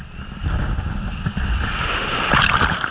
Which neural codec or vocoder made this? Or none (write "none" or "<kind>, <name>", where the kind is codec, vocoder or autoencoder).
none